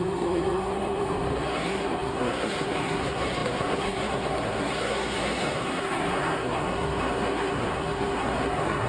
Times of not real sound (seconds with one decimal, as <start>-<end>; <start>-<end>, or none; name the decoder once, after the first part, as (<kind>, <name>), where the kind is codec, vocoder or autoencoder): 0.0-8.9 (codec, SNAC)